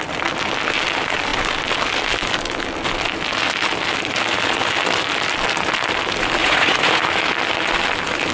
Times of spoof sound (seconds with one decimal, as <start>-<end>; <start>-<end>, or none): 6.4-7.0